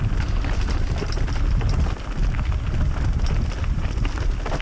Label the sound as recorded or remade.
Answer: recorded